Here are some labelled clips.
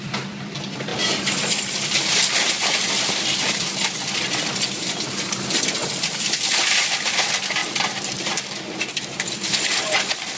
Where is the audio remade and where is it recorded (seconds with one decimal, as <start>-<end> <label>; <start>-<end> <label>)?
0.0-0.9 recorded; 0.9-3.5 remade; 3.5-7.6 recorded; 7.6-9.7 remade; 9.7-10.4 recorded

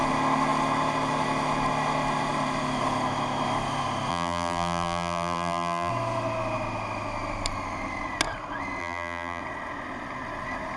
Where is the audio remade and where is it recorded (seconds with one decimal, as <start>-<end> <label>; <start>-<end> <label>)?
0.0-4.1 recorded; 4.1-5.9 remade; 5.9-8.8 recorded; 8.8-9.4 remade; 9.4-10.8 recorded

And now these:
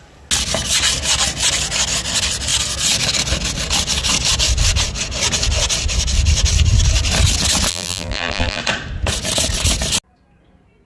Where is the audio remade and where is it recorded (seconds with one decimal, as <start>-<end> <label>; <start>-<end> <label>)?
0.0-7.7 recorded; 7.7-8.6 remade; 8.6-10.9 recorded

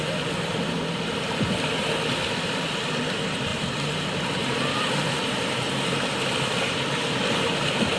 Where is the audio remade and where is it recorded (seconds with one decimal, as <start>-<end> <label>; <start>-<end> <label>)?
0.0-8.0 remade